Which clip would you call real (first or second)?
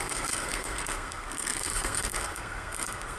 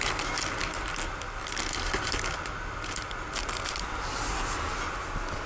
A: second